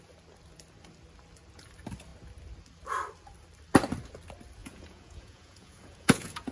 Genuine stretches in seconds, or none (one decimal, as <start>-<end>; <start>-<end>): 0.0-4.6